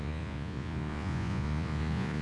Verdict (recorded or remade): remade